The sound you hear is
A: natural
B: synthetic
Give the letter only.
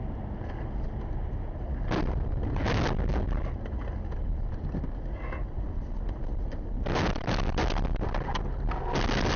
A